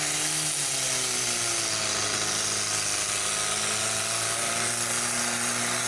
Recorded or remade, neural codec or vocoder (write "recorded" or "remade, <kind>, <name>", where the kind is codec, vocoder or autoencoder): recorded